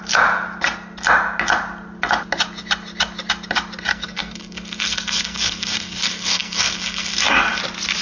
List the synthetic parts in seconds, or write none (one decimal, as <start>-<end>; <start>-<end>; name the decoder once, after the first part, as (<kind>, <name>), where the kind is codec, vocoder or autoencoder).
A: 3.9-7.6 (codec, SNAC)